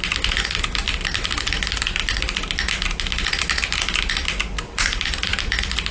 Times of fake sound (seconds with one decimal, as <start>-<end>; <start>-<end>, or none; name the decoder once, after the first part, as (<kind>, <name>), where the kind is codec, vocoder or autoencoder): none